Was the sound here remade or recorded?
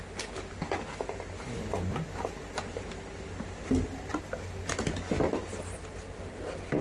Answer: recorded